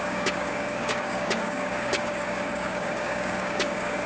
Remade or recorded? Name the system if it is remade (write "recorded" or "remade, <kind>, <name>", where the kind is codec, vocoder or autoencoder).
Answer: remade, codec, DAC